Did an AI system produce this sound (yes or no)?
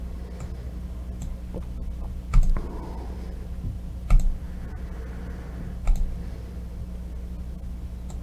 no